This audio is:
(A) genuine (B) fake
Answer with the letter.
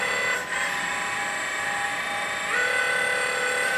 B